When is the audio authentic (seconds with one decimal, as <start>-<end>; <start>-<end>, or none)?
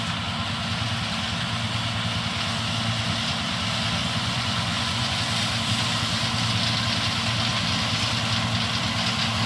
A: 0.0-4.0; 5.2-9.5